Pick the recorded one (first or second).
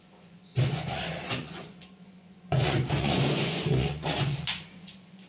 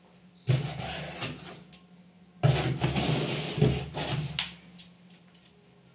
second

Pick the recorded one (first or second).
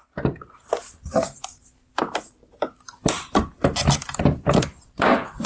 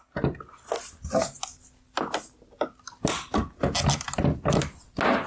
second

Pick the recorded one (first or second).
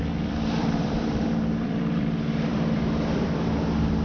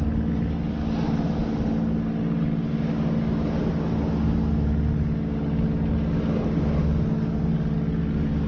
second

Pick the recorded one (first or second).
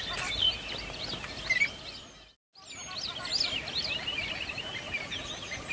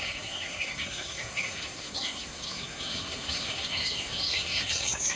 first